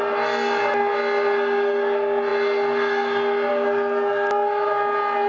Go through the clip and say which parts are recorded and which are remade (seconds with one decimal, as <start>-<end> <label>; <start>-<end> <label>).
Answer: 0.0-5.3 recorded